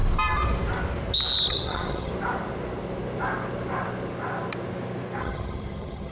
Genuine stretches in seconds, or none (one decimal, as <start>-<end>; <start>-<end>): 0.0-1.5; 2.1-5.2